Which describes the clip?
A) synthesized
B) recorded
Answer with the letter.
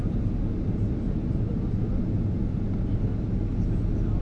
B